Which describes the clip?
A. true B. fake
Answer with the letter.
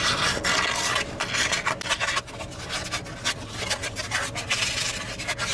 A